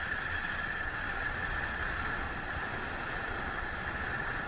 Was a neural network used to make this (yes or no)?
yes